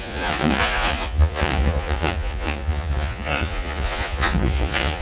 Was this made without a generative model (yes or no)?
no